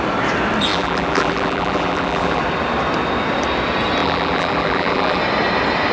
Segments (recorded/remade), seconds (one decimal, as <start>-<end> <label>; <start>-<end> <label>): 0.0-0.7 recorded; 0.7-2.4 remade; 2.4-4.0 recorded; 4.0-5.2 remade; 5.2-5.9 recorded